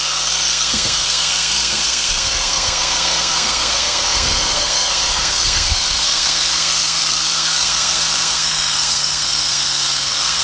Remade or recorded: remade